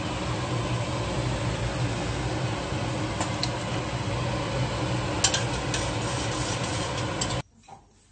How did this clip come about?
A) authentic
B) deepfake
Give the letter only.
A